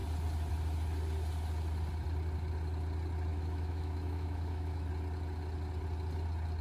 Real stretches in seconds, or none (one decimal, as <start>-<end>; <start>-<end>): 0.0-3.3; 4.9-6.6